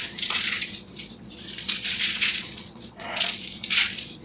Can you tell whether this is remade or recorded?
remade